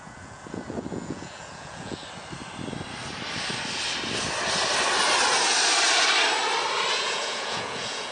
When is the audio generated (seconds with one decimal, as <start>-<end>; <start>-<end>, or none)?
0.0-2.0; 6.9-8.1